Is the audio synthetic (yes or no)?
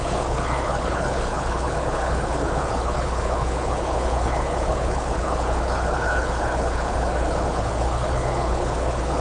yes